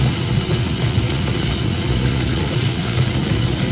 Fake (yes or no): yes